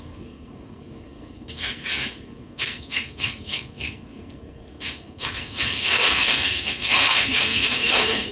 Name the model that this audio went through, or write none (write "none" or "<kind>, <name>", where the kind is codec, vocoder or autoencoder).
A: codec, SNAC